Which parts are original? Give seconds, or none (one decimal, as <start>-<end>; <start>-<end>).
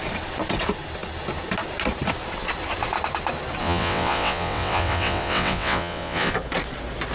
0.0-3.6; 6.3-7.1